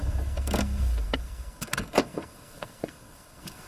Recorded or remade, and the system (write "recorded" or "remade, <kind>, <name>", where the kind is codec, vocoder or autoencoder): remade, codec, SNAC